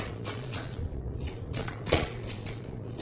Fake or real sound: fake